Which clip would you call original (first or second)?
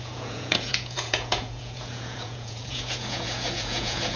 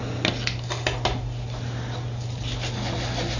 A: second